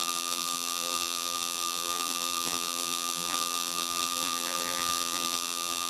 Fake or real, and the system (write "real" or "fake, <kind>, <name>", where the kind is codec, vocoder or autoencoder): fake, vocoder, BigVGAN v2